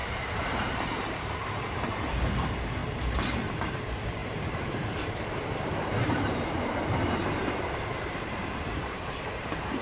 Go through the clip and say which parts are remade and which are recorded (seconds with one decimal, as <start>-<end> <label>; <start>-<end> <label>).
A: 0.0-9.8 remade